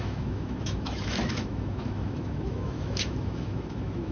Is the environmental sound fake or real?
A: fake